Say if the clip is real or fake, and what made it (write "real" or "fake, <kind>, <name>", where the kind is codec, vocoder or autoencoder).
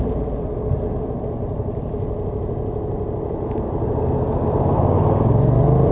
real